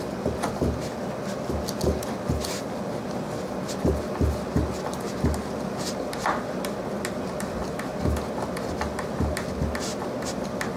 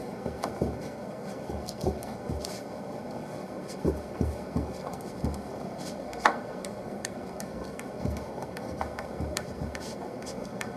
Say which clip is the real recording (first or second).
first